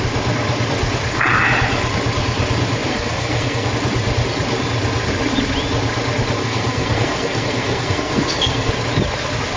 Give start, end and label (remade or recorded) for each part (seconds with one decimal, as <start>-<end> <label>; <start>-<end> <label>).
0.0-2.9 recorded; 2.9-3.7 remade; 3.7-6.4 recorded; 6.4-8.7 remade; 8.7-9.6 recorded

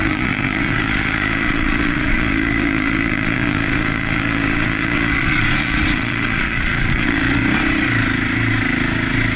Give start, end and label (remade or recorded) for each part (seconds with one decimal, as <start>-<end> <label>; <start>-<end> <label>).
0.0-7.4 remade; 7.4-9.4 recorded

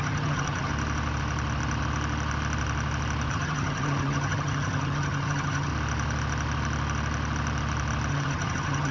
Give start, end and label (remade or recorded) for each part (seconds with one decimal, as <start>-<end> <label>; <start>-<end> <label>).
0.0-0.7 remade; 0.7-3.3 recorded; 3.3-5.7 remade; 5.7-8.1 recorded; 8.1-8.9 remade

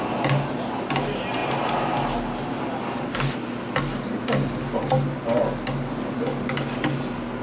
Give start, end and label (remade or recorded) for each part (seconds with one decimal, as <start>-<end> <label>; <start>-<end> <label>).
0.0-7.4 recorded